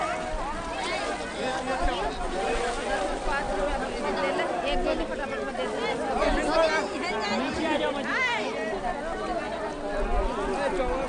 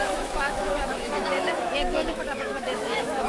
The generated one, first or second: second